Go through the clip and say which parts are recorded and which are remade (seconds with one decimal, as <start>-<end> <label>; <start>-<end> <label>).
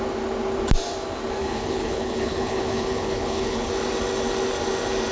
0.0-1.4 recorded; 1.4-3.7 remade; 3.7-5.1 recorded